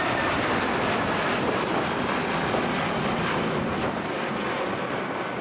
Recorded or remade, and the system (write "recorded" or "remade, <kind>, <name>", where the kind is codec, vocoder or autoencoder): recorded